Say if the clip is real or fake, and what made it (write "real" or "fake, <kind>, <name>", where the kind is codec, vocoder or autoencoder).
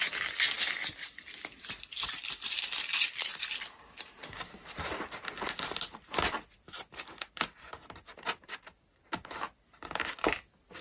real